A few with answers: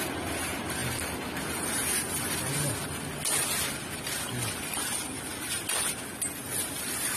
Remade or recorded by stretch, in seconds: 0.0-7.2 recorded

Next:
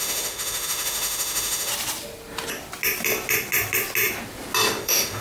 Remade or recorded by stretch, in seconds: 0.0-1.7 remade; 1.7-4.8 recorded; 4.8-5.2 remade